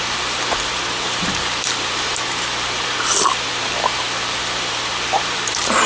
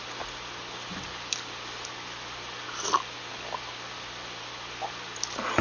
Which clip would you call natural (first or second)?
second